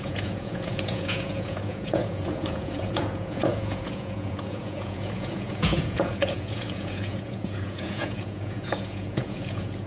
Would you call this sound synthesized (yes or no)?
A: yes